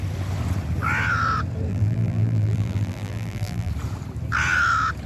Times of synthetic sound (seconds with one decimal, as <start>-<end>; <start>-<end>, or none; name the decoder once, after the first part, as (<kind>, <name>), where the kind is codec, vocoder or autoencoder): 1.7-3.7 (vocoder, BigVGAN v2)